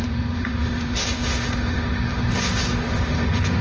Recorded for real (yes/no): no